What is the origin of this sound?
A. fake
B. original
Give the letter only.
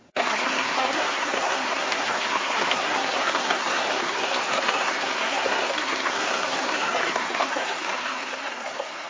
A